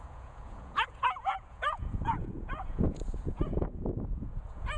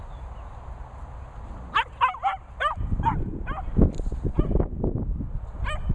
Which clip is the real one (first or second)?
second